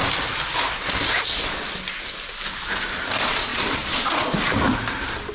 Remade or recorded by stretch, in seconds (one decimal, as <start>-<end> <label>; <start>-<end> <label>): 0.0-3.5 recorded; 3.5-4.4 remade; 4.4-5.3 recorded